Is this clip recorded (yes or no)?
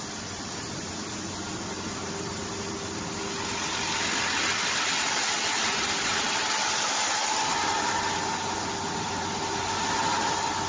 yes